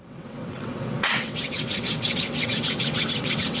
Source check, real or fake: fake